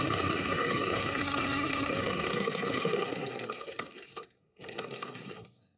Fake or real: fake